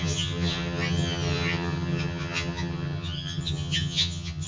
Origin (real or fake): fake